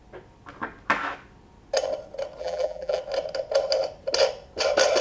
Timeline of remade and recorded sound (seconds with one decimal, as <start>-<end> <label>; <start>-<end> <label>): 0.0-2.4 recorded; 2.4-3.0 remade; 3.0-5.0 recorded